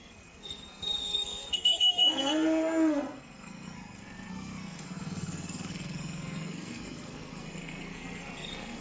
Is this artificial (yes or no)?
yes